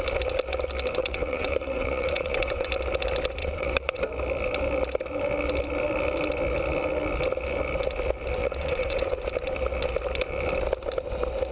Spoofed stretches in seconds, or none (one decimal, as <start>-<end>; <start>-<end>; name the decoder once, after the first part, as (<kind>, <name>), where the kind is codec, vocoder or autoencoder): 1.0-2.7 (vocoder, WaveNeXt); 3.4-4.0; 8.4-9.2